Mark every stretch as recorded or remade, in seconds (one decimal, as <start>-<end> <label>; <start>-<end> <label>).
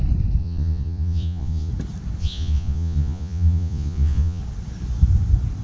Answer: 0.0-0.4 recorded; 0.4-1.7 remade; 1.7-2.2 recorded; 2.2-4.4 remade; 4.4-5.6 recorded